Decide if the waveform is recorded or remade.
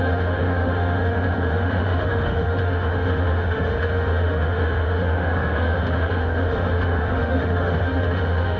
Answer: remade